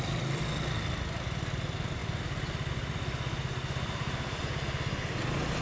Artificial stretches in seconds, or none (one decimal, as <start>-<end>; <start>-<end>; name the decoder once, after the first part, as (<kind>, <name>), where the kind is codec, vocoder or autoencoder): 2.0-2.7 (vocoder, BigVGAN v2); 3.6-4.4